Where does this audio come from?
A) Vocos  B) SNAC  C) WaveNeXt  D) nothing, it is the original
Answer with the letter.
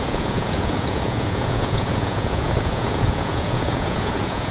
A